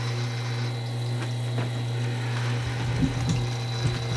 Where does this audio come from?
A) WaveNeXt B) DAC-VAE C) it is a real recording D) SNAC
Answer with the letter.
C